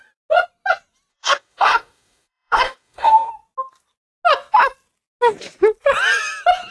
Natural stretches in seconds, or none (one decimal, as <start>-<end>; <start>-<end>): 0.0-1.1; 3.3-6.7